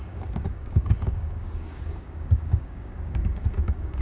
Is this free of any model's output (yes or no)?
no